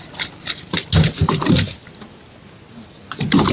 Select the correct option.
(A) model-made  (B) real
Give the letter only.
B